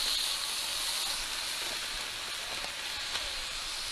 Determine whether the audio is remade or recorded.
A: recorded